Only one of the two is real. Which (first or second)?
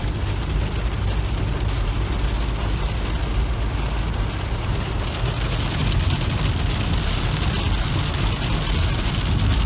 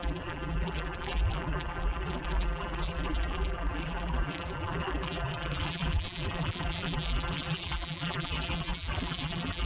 first